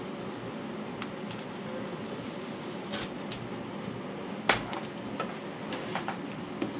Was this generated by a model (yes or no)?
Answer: no